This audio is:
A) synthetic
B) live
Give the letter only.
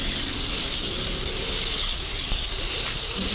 A